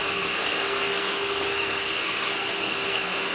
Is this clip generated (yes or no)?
yes